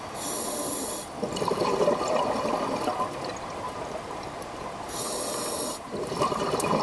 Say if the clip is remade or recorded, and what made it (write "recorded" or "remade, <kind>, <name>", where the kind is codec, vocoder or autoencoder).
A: recorded